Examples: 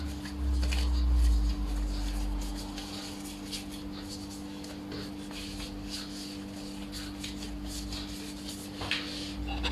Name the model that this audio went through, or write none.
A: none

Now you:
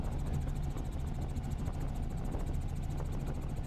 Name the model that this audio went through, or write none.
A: none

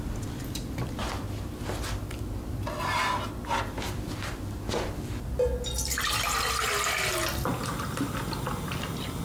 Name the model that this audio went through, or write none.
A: none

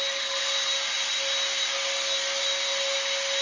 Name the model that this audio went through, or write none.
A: none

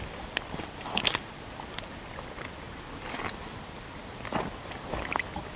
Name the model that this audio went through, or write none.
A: none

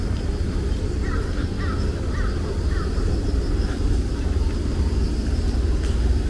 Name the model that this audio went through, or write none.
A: none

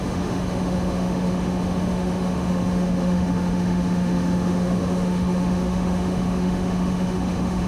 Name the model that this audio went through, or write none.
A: autoencoder, DAC-VAE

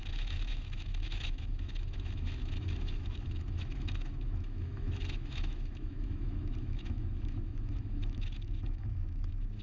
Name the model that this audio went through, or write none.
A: autoencoder, DAC-VAE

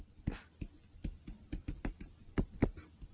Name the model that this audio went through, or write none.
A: none